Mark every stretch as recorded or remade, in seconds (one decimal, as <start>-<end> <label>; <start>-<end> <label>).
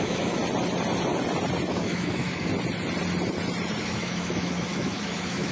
0.0-0.4 remade; 0.4-1.7 recorded; 1.7-2.5 remade; 2.5-3.8 recorded; 3.8-5.5 remade